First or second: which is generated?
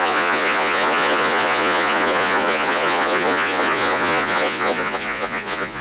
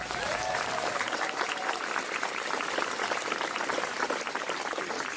first